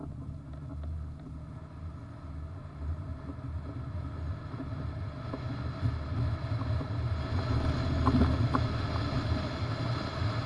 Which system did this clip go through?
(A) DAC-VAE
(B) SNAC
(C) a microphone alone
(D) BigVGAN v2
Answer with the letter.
C